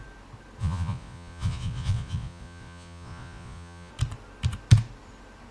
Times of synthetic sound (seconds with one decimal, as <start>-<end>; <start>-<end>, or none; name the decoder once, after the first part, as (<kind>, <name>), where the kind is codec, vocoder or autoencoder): 0.6-3.9 (vocoder, Vocos)